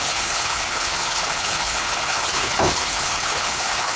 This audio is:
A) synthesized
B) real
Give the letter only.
A